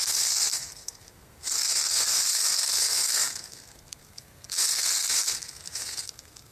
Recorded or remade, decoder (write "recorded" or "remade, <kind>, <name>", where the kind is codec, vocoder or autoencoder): remade, codec, SNAC